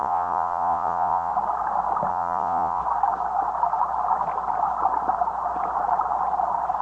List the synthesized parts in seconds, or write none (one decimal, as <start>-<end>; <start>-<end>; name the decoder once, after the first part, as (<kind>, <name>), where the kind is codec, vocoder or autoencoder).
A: 0.0-1.3 (vocoder, Vocos); 2.1-2.8